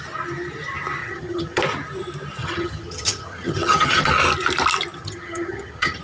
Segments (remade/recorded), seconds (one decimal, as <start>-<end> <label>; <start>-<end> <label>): 0.0-1.0 recorded; 1.0-1.6 remade; 1.6-2.4 recorded; 2.4-4.1 remade; 4.1-5.0 recorded; 5.0-6.0 remade